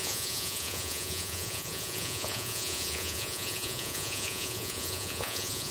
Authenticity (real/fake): fake